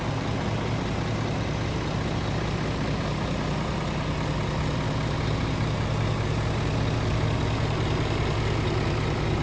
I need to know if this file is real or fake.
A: real